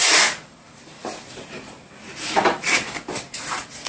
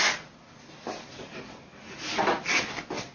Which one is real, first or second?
second